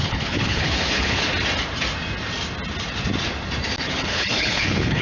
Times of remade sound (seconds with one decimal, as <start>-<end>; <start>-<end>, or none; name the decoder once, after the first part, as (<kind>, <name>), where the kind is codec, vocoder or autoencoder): 0.0-1.3 (codec, HILCodec); 3.8-5.0